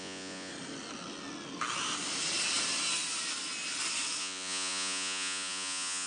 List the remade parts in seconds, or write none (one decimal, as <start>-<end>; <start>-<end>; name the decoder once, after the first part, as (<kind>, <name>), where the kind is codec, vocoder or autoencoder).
0.0-0.5 (vocoder, Vocos); 4.2-6.1